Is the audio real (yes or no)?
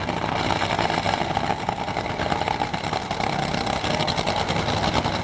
yes